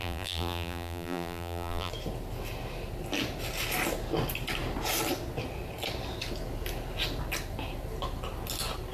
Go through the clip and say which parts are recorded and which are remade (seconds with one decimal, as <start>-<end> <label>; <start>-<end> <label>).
0.0-1.9 remade; 1.9-8.9 recorded